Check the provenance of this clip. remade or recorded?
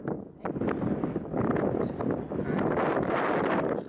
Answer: recorded